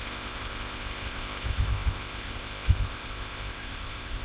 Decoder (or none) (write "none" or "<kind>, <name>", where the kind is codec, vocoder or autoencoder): codec, ZipCodec